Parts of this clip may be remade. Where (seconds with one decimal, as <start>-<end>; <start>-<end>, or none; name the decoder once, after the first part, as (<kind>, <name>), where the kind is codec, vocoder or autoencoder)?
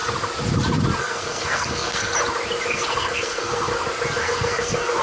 1.0-2.1 (codec, SNAC); 2.7-3.7; 4.2-5.0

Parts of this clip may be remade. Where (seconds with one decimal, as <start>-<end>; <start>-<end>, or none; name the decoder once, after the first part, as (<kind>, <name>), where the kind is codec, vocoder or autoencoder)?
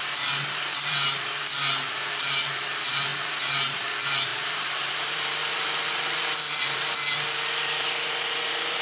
0.0-8.8 (vocoder, BigVGAN v2)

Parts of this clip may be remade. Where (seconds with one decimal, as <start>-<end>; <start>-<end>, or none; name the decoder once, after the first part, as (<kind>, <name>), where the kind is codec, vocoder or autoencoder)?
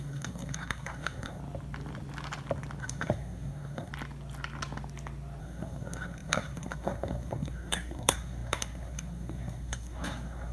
0.0-1.4 (codec, SNAC); 2.8-3.9; 5.4-10.5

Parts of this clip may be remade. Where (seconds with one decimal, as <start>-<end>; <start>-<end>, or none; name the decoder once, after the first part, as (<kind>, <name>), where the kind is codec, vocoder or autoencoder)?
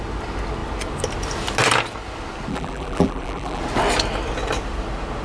2.5-3.6 (vocoder, BigVGAN v2)